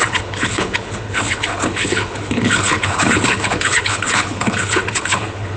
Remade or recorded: remade